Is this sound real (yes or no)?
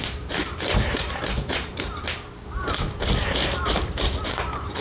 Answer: no